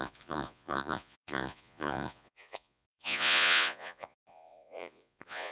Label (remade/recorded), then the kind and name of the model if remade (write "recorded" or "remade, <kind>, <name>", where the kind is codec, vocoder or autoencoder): remade, vocoder, Vocos